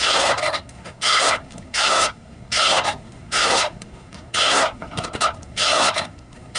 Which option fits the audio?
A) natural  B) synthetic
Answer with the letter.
B